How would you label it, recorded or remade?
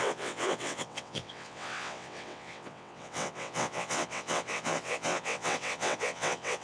remade